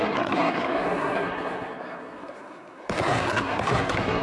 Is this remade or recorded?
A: remade